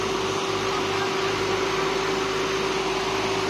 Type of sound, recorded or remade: recorded